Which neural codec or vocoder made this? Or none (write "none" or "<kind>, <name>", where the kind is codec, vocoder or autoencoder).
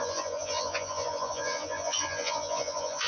vocoder, Vocos